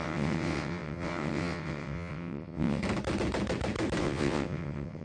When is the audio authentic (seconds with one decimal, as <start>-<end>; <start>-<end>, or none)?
2.8-4.0